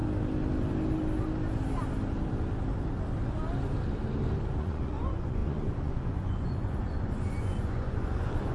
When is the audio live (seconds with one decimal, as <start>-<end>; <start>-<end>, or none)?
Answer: 0.0-4.6